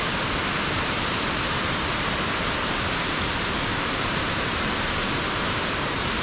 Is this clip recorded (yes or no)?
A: no